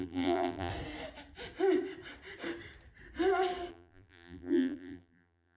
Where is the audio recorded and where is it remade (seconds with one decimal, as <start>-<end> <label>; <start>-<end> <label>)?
0.0-0.7 remade; 0.7-3.7 recorded; 3.7-5.6 remade